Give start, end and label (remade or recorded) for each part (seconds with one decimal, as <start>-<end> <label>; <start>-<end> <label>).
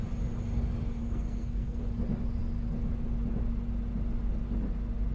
0.0-1.0 recorded; 1.0-1.8 remade; 1.8-5.1 recorded